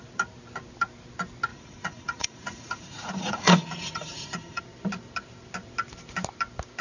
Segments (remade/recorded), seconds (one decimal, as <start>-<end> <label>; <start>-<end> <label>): 0.0-1.5 recorded; 1.5-4.6 remade; 4.6-6.8 recorded